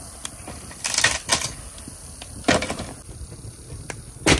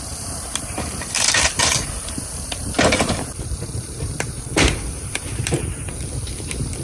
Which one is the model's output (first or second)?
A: second